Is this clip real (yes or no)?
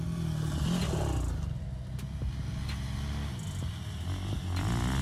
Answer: yes